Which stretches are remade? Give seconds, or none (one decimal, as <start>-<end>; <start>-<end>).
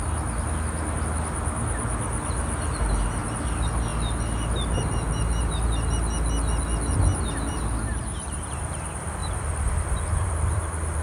7.9-8.5